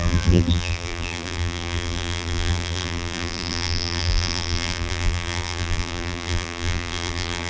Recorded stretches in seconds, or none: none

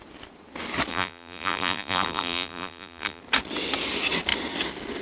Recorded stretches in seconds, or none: 0.0-0.9; 3.2-5.0